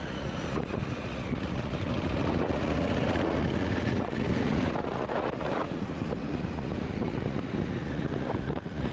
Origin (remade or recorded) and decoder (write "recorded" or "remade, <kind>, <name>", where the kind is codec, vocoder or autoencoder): remade, vocoder, Vocos